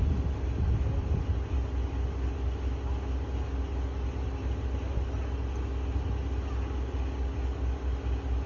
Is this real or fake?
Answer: real